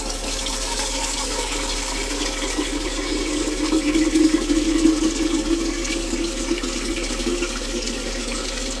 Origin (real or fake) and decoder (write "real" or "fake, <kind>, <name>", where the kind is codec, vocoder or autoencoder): fake, codec, DAC